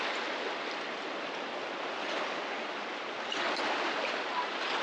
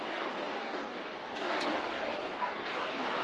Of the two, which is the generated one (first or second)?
second